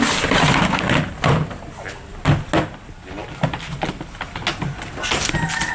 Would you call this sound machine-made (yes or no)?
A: no